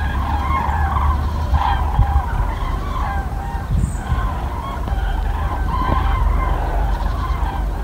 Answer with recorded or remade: remade